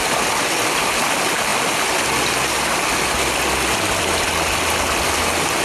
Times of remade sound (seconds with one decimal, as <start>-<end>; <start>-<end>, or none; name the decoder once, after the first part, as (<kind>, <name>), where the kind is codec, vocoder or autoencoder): none